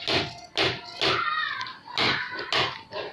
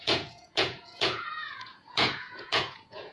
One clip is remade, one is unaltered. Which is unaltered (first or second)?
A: first